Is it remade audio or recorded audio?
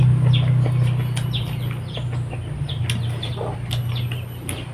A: recorded